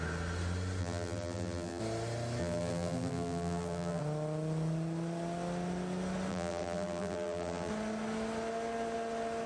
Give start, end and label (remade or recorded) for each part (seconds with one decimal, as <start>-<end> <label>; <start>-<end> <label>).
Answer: 0.0-0.8 recorded; 0.8-1.8 remade; 1.8-2.4 recorded; 2.4-4.0 remade; 4.0-6.3 recorded; 6.3-7.7 remade; 7.7-9.5 recorded